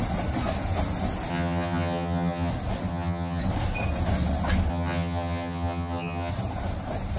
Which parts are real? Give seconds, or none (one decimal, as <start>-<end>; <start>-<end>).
0.0-1.3; 2.5-2.9; 3.4-4.7; 6.3-7.2